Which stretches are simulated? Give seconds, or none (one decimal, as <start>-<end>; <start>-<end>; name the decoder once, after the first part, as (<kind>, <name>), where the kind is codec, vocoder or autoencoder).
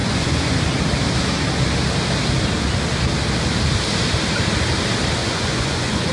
0.0-0.6 (vocoder, Vocos); 5.2-6.1